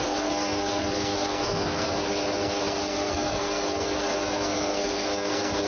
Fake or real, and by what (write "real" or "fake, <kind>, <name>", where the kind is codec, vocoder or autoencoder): fake, codec, SNAC